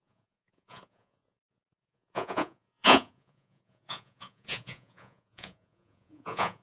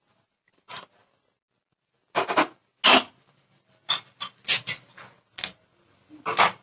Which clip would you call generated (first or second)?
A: first